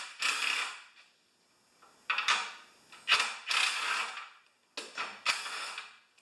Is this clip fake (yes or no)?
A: no